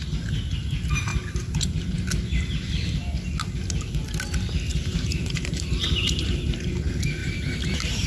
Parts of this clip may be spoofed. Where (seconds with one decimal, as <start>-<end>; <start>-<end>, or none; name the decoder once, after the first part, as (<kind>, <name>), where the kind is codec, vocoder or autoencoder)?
1.1-1.9 (vocoder, BigVGAN v2); 4.7-6.6; 7.2-8.1